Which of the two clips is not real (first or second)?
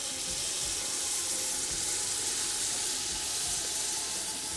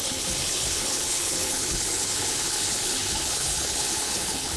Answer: second